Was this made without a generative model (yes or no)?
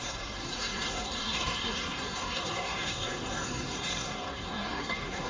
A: no